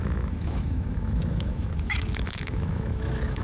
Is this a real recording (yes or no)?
no